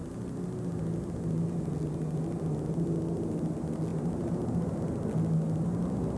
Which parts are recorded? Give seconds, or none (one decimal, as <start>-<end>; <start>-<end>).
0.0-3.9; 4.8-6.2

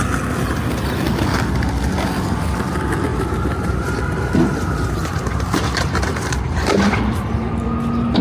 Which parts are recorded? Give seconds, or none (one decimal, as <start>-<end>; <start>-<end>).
0.0-3.1; 7.2-8.2

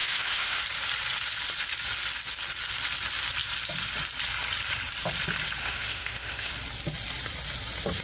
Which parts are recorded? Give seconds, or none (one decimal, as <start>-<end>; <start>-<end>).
0.6-5.6; 6.5-8.0

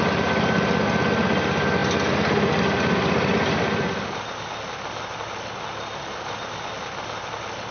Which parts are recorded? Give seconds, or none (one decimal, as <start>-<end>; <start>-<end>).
0.0-7.7

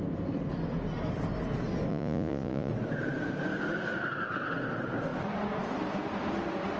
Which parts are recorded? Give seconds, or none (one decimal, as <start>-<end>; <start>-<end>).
0.0-1.9; 2.7-6.8

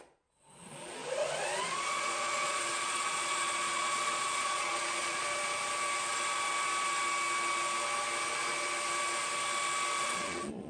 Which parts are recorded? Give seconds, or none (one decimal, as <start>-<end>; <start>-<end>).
1.0-1.6; 5.2-10.0

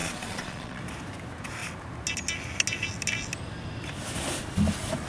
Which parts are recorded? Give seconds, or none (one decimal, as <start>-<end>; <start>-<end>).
0.8-5.1

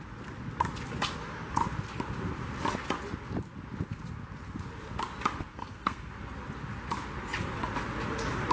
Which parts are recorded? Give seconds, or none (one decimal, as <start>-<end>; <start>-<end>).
0.0-5.5; 6.1-8.5